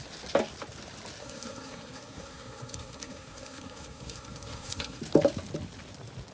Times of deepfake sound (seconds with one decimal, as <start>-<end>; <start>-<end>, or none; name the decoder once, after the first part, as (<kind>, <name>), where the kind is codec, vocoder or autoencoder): 1.2-5.0 (codec, SNAC)

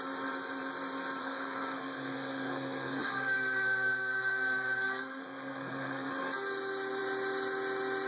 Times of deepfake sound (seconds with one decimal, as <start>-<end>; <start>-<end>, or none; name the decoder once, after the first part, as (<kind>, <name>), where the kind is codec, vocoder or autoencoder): 1.2-6.1 (codec, SNAC)

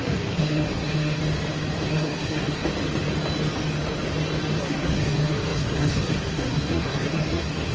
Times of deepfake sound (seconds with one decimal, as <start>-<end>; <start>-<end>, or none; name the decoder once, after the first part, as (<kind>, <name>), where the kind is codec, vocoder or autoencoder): 0.0-1.2 (codec, SNAC); 1.9-2.6; 4.6-7.7

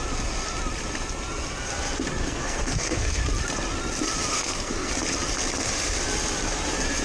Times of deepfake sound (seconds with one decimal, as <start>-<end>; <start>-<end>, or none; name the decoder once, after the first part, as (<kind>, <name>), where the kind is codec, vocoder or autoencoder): 2.2-3.2 (codec, SNAC); 4.3-4.9

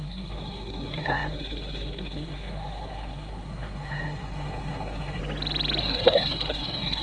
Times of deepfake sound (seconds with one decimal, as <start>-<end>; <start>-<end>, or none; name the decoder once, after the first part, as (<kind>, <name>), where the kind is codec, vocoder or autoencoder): 0.0-5.2 (codec, SNAC); 5.8-7.0

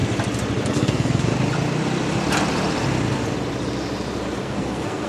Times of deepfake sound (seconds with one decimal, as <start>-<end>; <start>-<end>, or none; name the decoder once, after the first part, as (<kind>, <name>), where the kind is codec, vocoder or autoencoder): 0.7-1.3 (codec, SNAC); 4.4-5.1